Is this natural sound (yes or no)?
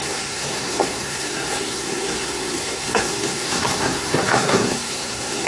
no